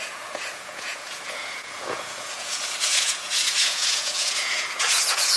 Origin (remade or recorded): remade